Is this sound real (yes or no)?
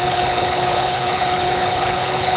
no